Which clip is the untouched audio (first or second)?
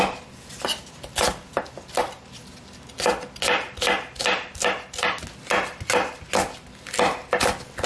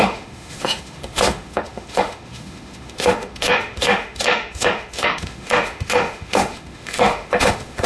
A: first